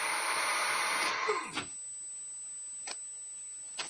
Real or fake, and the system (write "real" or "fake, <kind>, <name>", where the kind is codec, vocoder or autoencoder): real